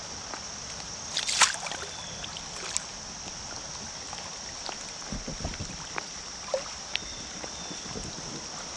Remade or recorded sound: recorded